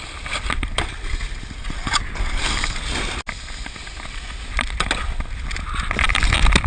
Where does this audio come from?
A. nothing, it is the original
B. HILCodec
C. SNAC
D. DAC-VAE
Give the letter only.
A